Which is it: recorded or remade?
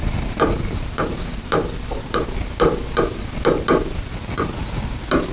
recorded